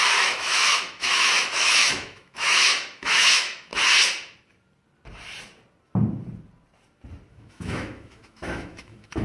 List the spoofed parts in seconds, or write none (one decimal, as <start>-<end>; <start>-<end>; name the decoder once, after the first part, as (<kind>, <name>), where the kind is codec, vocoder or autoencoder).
0.0-3.7 (autoencoder, DAC-VAE); 7.3-9.2